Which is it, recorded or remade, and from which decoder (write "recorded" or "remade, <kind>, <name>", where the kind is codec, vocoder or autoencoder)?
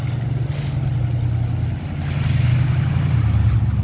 recorded